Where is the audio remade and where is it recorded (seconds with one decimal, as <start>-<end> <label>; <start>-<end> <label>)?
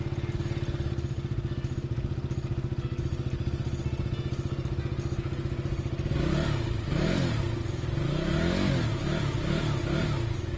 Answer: 0.0-10.6 recorded